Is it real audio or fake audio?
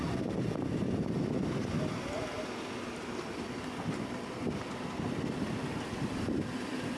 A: real